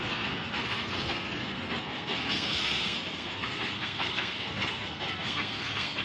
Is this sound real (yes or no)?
no